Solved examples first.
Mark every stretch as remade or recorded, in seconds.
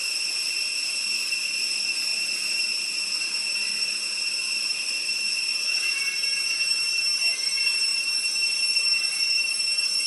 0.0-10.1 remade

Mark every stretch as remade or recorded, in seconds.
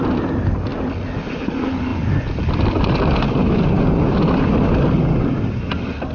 0.0-6.1 recorded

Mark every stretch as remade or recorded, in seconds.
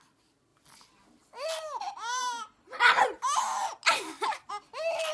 0.0-2.2 recorded; 2.2-3.2 remade; 3.2-5.1 recorded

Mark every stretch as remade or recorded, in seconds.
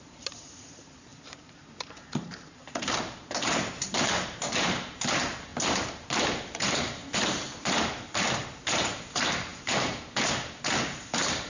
0.0-11.5 remade